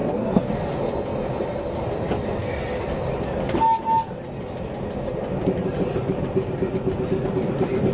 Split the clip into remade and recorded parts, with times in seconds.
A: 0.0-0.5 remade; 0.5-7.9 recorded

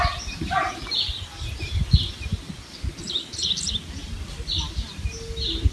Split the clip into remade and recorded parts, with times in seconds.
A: 0.0-5.7 recorded

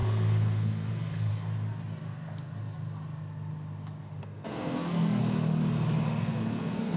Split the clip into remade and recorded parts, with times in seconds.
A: 0.0-1.3 remade; 1.3-4.2 recorded; 4.2-5.2 remade; 5.2-6.2 recorded; 6.2-7.0 remade

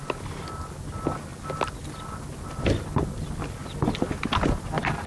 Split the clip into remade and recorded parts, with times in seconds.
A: 0.0-5.1 recorded

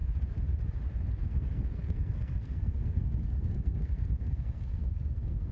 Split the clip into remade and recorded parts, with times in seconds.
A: 0.0-1.2 recorded; 1.2-5.5 remade

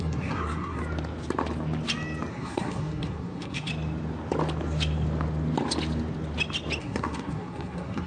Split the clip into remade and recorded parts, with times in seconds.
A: 0.0-0.8 remade; 0.8-2.3 recorded; 2.3-3.7 remade; 3.7-6.8 recorded; 6.8-8.1 remade

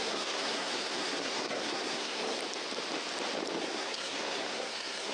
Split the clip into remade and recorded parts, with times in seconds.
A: 0.0-2.4 remade; 2.4-3.6 recorded; 3.6-5.1 remade